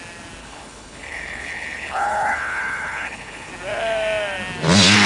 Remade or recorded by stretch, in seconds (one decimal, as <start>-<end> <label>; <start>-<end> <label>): 0.0-0.4 recorded; 0.4-3.5 remade; 3.5-5.1 recorded